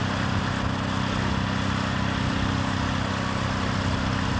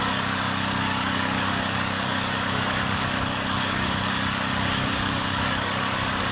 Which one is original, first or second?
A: first